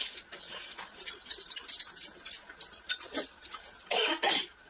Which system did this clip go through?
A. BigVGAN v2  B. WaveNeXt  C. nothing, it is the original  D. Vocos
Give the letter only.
C